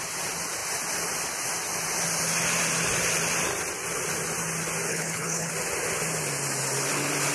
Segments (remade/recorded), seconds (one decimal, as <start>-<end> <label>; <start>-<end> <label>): 0.0-4.9 recorded; 4.9-5.5 remade; 5.5-7.3 recorded